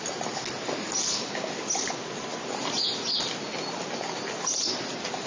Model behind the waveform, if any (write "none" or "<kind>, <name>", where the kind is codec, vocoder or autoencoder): none